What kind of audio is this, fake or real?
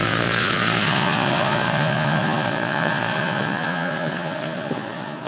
fake